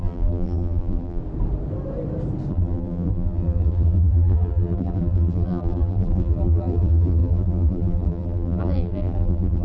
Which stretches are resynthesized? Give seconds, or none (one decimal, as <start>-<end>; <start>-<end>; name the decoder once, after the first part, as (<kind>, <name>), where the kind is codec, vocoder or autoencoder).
0.0-1.2 (vocoder, BigVGAN v2); 2.5-9.6